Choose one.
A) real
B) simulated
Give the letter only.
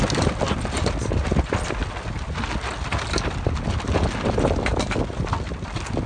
A